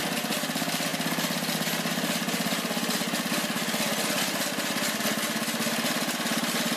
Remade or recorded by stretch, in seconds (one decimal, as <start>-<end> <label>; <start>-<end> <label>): 0.0-6.8 recorded